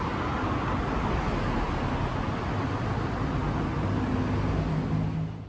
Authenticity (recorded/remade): recorded